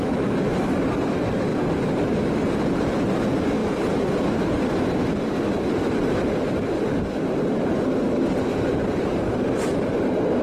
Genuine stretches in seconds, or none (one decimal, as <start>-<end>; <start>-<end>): 0.0-1.5; 3.2-8.5